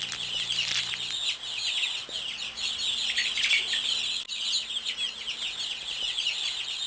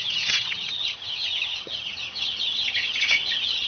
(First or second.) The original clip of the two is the first